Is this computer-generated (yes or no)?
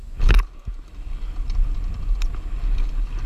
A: no